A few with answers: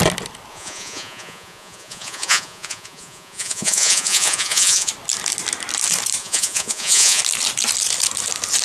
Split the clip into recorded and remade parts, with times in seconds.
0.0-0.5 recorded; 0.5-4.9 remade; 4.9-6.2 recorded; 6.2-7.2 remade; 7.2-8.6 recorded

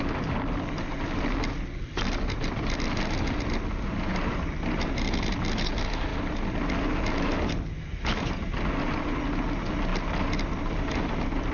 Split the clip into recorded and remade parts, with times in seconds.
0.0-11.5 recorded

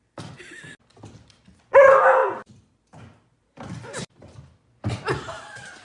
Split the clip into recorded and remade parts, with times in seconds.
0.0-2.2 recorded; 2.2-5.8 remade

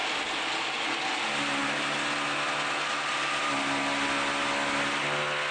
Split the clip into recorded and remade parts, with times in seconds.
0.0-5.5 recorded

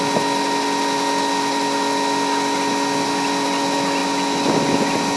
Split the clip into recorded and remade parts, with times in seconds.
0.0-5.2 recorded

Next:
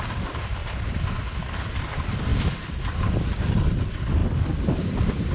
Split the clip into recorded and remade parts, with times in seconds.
0.0-0.6 remade; 0.6-1.9 recorded; 1.9-5.3 remade